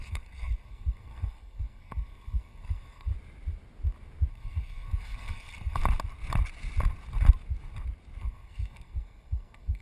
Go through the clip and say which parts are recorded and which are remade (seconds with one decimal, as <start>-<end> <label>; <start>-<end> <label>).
0.0-3.1 remade; 3.1-4.3 recorded; 4.3-5.8 remade; 5.8-8.2 recorded; 8.2-9.8 remade